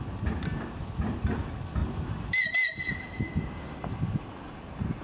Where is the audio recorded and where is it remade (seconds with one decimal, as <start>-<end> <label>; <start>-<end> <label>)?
0.0-5.0 recorded